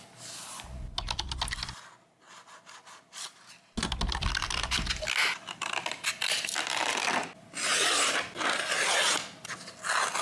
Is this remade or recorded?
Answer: recorded